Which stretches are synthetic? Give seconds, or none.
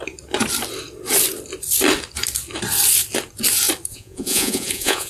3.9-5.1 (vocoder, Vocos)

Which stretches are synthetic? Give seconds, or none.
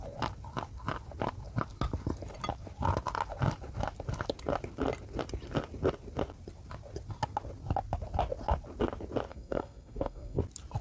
9.3-10.4 (codec, SNAC)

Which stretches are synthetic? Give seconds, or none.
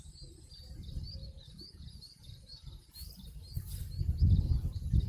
1.2-2.6 (vocoder, Vocos)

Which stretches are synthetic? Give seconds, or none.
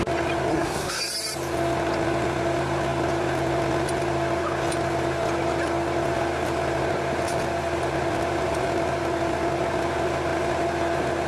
0.5-1.0 (codec, SNAC)